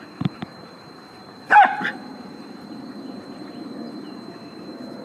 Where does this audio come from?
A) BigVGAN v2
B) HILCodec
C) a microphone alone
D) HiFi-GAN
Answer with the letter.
A